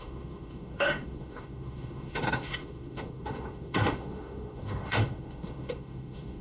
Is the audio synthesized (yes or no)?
yes